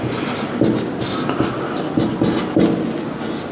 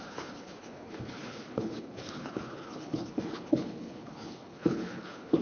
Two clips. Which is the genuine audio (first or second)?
first